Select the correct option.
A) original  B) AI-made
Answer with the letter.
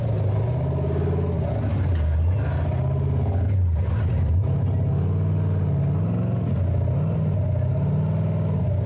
A